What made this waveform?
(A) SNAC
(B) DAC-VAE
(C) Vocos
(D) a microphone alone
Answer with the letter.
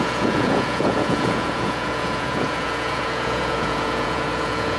C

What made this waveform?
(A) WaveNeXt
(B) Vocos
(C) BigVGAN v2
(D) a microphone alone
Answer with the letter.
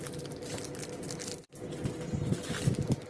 D